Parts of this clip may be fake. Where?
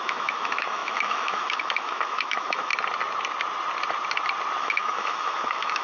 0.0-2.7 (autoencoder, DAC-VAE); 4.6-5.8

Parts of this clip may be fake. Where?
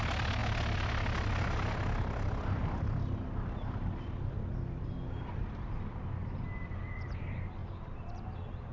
7.6-8.7 (vocoder, BigVGAN v2)